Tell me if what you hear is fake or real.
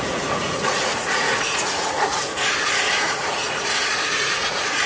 fake